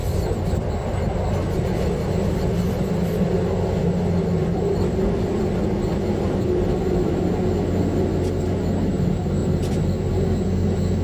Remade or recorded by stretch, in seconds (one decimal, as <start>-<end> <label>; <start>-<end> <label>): 0.0-4.4 recorded; 4.4-5.4 remade; 5.4-9.4 recorded; 9.4-10.1 remade; 10.1-11.0 recorded